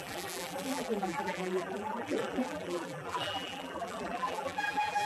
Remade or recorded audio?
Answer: remade